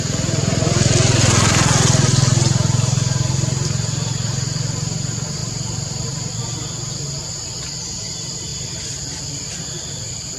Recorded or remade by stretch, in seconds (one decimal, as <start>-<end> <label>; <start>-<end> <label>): 0.0-5.4 recorded; 5.4-6.4 remade; 6.4-8.5 recorded; 8.5-9.4 remade; 9.4-10.4 recorded